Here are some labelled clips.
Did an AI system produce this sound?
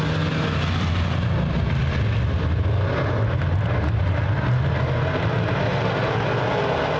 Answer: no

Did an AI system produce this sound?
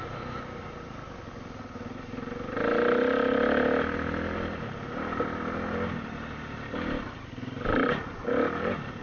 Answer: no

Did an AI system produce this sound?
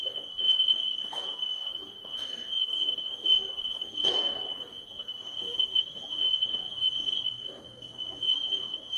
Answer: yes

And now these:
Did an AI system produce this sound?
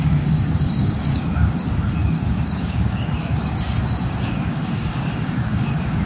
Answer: yes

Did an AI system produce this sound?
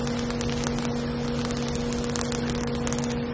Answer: no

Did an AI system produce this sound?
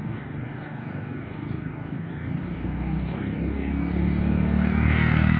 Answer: yes